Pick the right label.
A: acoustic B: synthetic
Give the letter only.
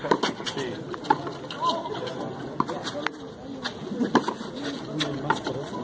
A